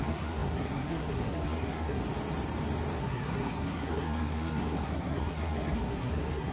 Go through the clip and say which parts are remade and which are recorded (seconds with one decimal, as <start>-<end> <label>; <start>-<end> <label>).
0.0-2.0 remade; 2.0-2.9 recorded; 2.9-6.5 remade